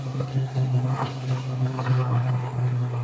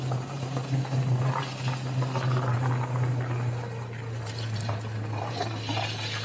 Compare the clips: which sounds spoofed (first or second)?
first